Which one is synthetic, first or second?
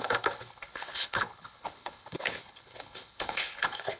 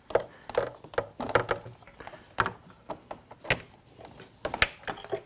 first